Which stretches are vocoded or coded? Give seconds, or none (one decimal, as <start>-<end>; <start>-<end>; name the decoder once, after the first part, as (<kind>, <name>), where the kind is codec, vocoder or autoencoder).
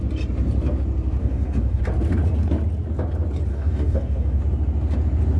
1.2-1.8 (codec, DAC); 3.5-4.4